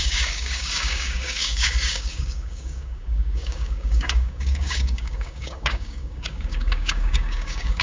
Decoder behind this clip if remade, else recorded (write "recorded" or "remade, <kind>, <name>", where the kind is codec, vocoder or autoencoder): remade, codec, DAC